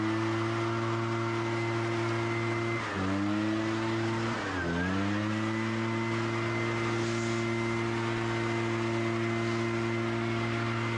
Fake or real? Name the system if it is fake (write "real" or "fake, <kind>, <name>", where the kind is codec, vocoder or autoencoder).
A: real